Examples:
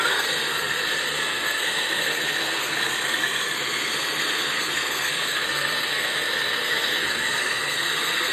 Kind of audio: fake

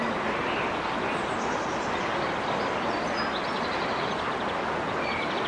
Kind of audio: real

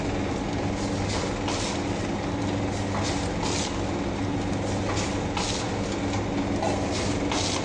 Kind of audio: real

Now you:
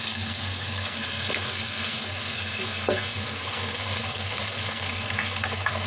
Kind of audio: fake